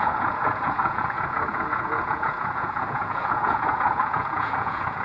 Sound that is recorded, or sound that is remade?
remade